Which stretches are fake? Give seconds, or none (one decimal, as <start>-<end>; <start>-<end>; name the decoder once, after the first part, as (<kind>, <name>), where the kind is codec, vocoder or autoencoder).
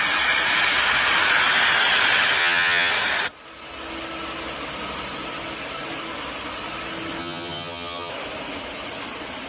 2.4-2.9 (vocoder, HiFi-GAN); 7.2-8.1